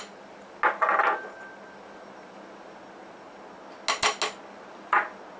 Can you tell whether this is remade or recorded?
recorded